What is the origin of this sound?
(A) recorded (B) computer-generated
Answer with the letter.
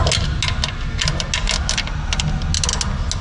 A